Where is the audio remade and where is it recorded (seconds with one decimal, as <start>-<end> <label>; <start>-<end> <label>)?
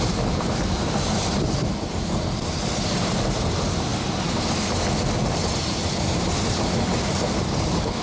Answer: 0.0-3.9 remade; 3.9-5.5 recorded; 5.5-8.0 remade